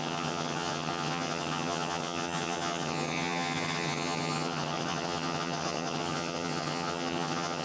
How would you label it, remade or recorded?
remade